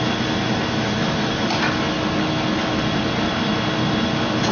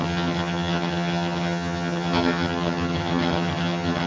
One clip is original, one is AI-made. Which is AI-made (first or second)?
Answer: second